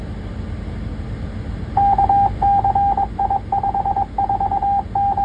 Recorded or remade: recorded